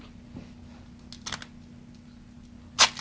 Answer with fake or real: real